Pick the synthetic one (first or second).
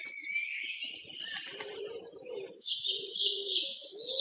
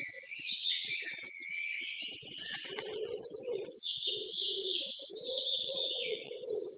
second